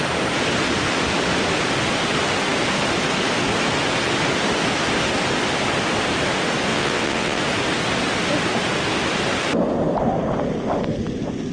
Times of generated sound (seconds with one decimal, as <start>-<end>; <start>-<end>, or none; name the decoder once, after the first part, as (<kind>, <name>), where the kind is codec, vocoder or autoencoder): 6.7-7.4 (vocoder, WaveNeXt)